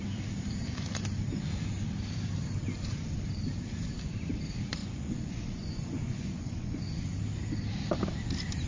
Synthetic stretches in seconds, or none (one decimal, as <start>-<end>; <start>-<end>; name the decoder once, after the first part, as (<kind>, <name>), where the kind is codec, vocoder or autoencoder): 4.8-6.8 (vocoder, Vocos)